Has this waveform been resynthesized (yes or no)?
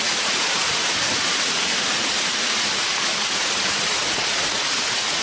yes